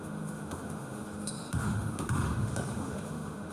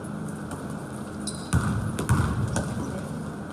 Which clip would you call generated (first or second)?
first